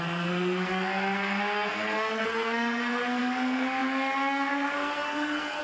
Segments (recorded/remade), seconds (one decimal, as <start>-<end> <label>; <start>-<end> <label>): 0.0-5.6 remade